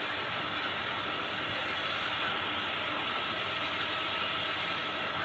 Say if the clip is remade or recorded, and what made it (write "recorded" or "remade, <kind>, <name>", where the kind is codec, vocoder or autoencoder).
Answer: recorded